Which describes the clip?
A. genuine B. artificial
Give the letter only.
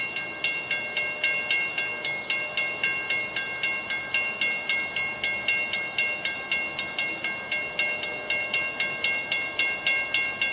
A